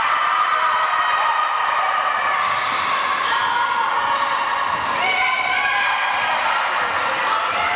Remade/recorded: recorded